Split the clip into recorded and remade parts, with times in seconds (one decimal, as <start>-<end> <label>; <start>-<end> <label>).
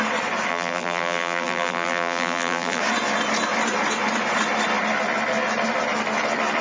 0.0-0.5 recorded; 0.5-2.8 remade; 2.8-6.6 recorded